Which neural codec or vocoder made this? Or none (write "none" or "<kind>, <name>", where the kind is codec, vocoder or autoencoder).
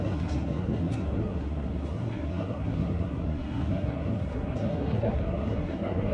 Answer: codec, SNAC